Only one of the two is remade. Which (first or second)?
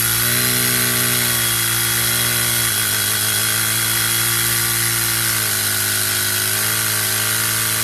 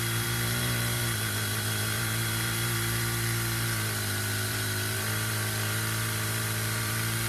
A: second